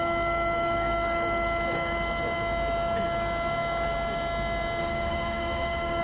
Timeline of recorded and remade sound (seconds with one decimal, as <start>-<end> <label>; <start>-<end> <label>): 0.0-4.8 recorded; 4.8-6.0 remade